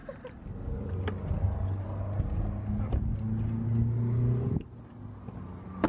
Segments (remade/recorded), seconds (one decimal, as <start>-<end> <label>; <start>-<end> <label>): 0.0-5.9 recorded